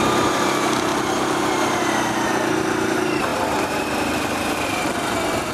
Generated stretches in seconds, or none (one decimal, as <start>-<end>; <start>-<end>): 0.0-0.9; 1.5-5.5

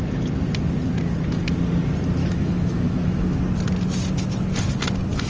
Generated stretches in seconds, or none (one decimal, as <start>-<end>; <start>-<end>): 2.2-3.4

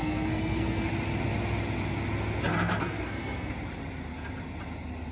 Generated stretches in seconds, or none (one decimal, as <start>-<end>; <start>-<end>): 0.0-0.9; 2.5-3.5

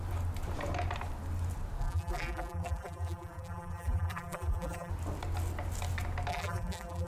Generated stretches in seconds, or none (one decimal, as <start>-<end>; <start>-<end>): 1.8-4.9; 6.3-7.1

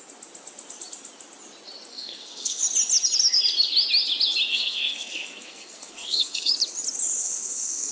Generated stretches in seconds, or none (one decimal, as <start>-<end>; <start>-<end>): 1.9-2.6; 4.5-6.5; 7.2-7.9

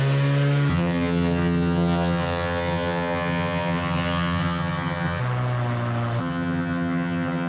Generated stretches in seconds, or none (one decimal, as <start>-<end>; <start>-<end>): 0.7-5.2; 6.2-7.5